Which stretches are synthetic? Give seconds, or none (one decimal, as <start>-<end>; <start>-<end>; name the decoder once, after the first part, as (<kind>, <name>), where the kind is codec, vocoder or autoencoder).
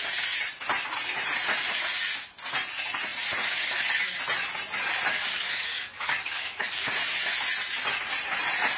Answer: 5.1-6.9 (codec, DAC)